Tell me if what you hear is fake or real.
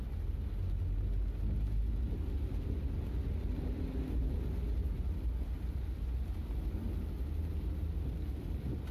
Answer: real